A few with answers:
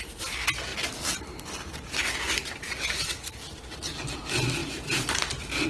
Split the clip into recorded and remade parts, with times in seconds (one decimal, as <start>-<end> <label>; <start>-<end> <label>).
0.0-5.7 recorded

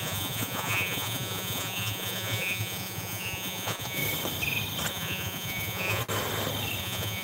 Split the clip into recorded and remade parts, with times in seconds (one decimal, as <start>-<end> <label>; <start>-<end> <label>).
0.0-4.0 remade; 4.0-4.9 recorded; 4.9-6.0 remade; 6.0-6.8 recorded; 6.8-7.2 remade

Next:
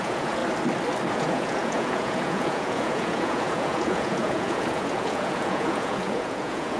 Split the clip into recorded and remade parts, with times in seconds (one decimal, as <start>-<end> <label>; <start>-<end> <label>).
0.0-0.4 remade; 0.4-1.1 recorded; 1.1-6.8 remade

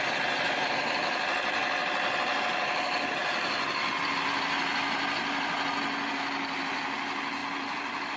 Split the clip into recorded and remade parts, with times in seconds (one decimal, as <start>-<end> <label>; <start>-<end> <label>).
0.0-8.2 recorded